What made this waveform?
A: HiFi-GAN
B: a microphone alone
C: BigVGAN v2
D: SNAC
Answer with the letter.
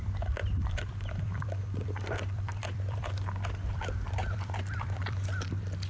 C